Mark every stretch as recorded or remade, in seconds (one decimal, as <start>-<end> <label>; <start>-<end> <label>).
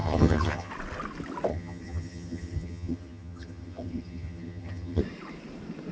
0.0-0.7 remade; 0.7-1.5 recorded; 1.5-5.0 remade; 5.0-5.9 recorded